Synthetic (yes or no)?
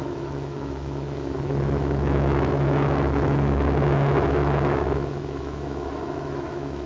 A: yes